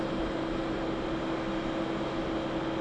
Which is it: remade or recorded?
recorded